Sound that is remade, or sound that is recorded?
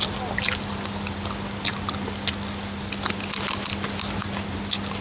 recorded